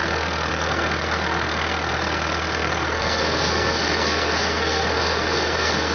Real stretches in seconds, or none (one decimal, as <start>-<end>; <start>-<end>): none